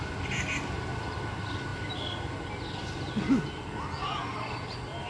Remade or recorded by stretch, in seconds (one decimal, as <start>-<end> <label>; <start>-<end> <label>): 0.0-5.1 recorded